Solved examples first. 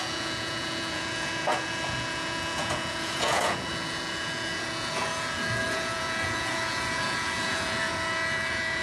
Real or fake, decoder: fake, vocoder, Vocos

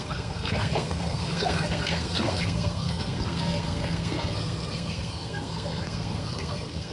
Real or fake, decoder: fake, codec, SNAC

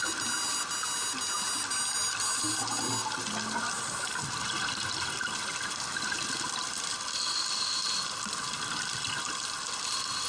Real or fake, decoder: real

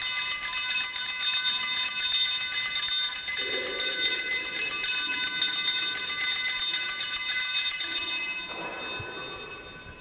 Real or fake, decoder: real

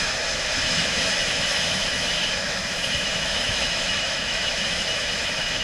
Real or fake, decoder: fake, autoencoder, DAC-VAE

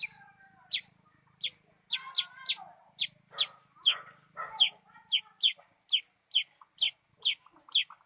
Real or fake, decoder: real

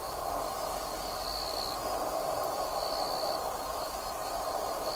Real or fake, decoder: real